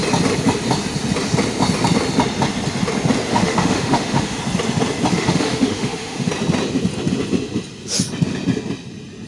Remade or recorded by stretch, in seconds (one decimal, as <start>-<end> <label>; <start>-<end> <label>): 0.0-3.3 recorded; 3.3-4.4 remade; 4.4-5.1 recorded; 5.1-6.3 remade; 6.3-9.3 recorded